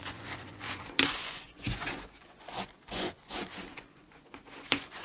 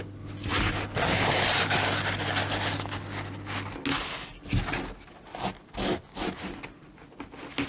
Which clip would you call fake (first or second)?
first